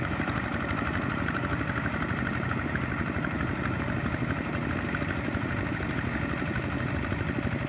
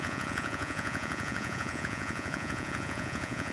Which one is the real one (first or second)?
first